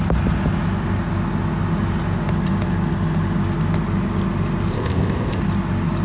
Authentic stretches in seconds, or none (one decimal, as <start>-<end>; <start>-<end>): 0.0-4.7; 5.4-6.0